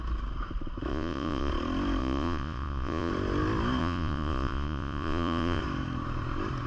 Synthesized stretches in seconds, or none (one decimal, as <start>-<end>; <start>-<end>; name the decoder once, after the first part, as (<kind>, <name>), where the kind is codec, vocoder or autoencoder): 0.9-1.5 (vocoder, Vocos); 2.0-3.1; 3.8-5.6